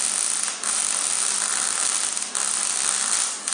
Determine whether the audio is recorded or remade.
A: recorded